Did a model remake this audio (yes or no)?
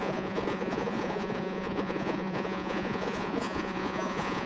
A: yes